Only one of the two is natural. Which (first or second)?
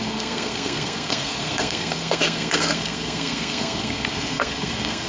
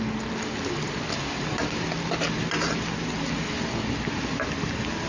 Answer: second